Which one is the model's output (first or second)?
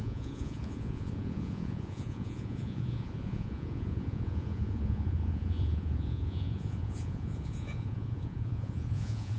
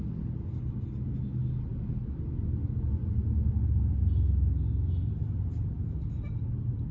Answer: first